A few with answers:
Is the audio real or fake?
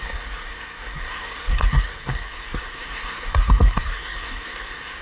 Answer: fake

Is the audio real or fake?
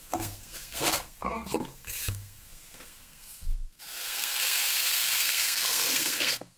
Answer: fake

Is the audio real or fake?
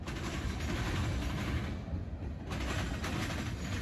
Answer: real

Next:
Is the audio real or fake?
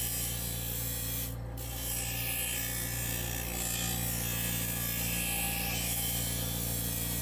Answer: real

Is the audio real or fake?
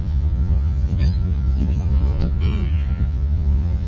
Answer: fake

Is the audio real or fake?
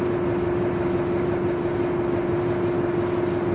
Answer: real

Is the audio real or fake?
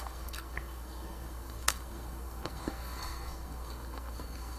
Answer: fake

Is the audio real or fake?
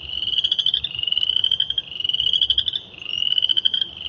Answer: real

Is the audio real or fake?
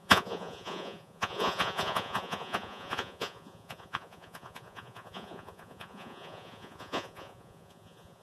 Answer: fake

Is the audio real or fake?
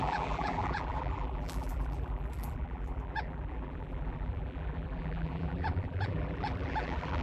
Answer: fake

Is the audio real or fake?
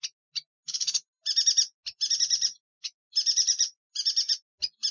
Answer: real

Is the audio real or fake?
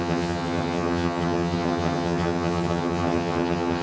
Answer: fake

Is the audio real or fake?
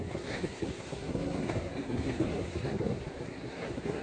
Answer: fake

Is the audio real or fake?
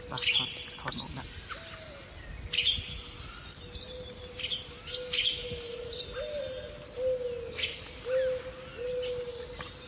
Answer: real